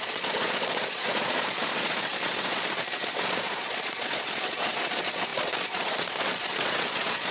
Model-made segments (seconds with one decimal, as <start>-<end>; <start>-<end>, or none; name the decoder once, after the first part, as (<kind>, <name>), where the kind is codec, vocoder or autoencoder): 0.0-7.3 (vocoder, Vocos)